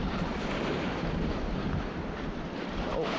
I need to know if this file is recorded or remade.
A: remade